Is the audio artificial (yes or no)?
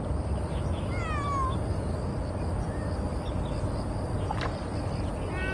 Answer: no